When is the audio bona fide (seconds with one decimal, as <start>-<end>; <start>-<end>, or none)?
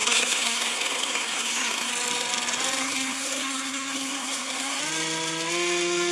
1.9-2.8; 4.8-6.1